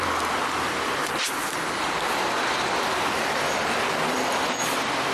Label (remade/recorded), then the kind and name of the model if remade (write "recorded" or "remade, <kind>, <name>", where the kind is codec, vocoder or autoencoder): remade, vocoder, BigVGAN v2